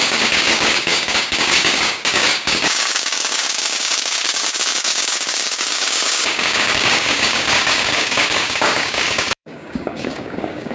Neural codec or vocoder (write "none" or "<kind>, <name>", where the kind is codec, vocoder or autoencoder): codec, DAC